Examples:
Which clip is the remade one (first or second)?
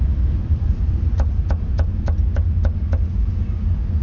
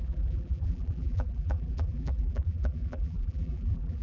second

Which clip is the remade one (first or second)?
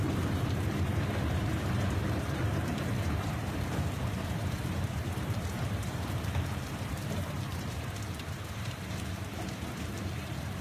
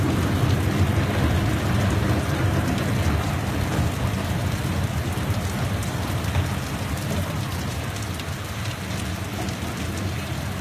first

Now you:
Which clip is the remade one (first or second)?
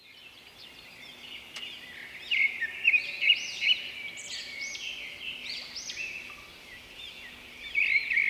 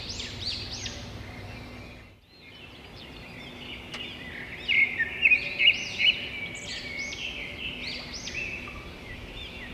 first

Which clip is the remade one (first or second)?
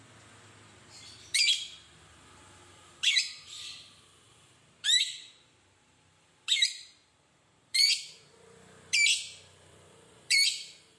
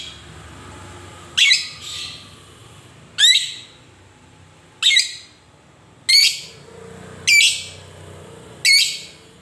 first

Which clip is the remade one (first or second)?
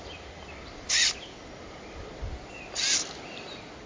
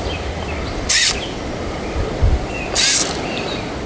second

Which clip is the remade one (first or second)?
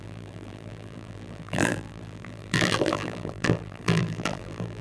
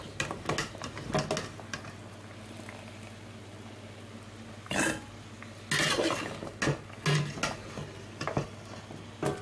first